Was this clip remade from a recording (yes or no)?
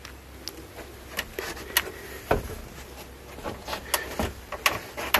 no